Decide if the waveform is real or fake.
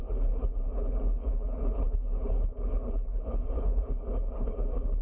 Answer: fake